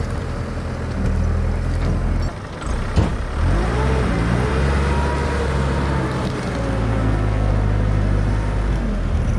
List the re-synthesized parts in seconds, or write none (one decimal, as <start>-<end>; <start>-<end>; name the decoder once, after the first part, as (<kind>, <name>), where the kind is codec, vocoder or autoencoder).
6.9-7.5 (codec, SNAC)